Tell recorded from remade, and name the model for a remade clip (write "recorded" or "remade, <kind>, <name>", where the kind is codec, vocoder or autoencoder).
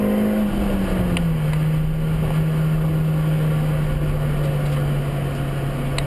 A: recorded